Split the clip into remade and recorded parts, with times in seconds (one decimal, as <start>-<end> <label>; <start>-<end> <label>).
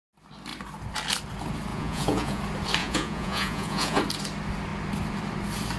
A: 0.0-1.7 recorded; 1.7-2.4 remade; 2.4-2.8 recorded; 2.8-4.0 remade; 4.0-5.8 recorded